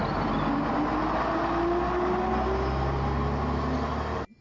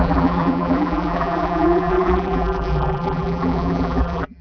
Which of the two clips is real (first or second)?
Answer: first